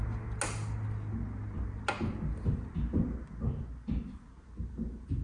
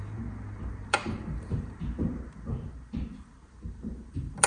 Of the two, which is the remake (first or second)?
second